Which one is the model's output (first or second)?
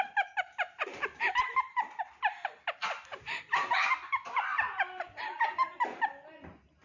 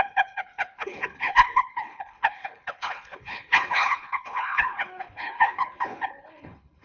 second